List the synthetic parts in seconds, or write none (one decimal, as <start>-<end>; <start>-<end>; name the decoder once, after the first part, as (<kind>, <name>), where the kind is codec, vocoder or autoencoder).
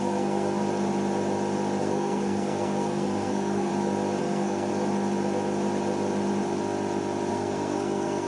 0.0-0.6 (codec, SNAC); 1.8-3.7; 4.2-4.7; 7.3-8.3